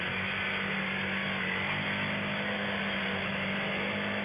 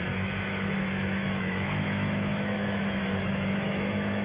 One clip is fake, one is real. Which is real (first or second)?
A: first